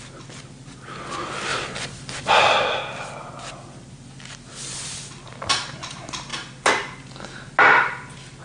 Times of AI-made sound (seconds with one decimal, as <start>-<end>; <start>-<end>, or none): none

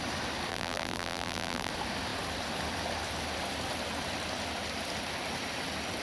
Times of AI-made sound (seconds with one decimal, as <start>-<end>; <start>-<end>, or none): 0.5-1.7

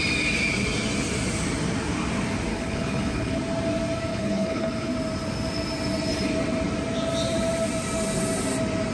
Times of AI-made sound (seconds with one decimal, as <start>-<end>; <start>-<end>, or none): 2.5-3.4; 4.1-4.9

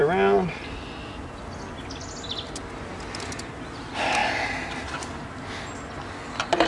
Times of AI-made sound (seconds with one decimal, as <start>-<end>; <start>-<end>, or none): 0.0-3.0

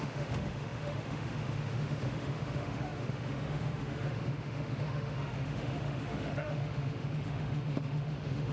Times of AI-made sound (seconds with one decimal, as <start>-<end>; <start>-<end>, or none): 0.0-8.5